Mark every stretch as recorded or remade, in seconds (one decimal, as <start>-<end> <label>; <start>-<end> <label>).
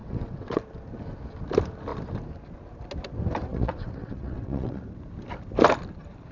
0.0-0.6 remade; 0.6-3.5 recorded; 3.5-4.8 remade; 4.8-6.3 recorded